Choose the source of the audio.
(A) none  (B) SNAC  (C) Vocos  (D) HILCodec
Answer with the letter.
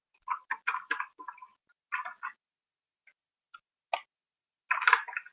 A